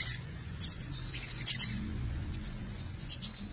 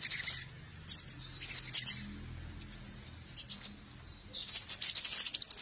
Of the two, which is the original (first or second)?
second